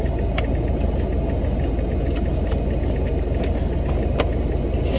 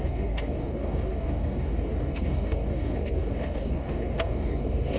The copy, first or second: second